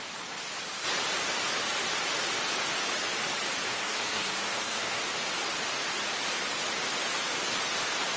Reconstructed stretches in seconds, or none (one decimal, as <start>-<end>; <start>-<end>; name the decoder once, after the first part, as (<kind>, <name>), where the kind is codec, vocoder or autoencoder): 3.7-5.0 (codec, SNAC)